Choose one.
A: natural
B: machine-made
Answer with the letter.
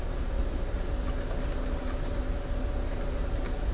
A